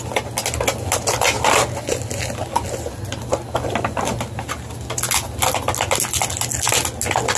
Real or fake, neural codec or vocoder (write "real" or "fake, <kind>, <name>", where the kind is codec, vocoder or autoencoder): real